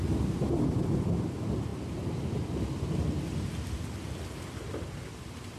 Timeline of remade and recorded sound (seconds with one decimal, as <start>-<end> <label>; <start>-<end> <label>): 0.0-5.6 recorded